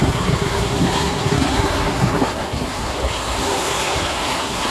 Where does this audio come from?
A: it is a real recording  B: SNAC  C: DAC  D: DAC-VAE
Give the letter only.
B